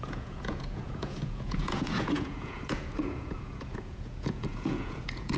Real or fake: fake